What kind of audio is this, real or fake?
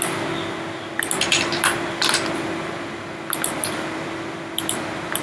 real